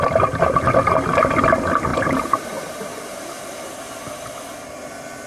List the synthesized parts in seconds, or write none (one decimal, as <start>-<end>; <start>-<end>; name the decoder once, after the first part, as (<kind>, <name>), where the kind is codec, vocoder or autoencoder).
1.9-3.2 (vocoder, BigVGAN v2)